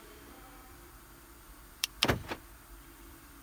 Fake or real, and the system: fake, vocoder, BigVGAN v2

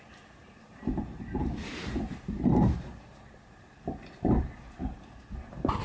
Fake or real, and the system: fake, vocoder, BigVGAN v2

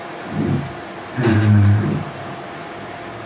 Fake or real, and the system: fake, vocoder, BigVGAN v2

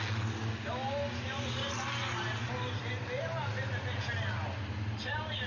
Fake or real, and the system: real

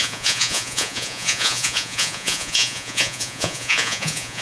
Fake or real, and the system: fake, vocoder, Vocos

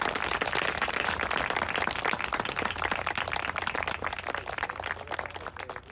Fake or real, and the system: real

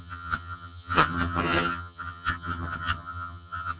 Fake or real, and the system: fake, vocoder, HiFi-GAN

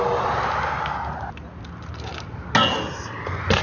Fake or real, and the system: real